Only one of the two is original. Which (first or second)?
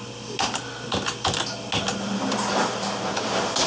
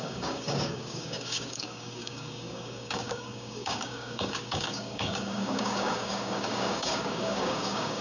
first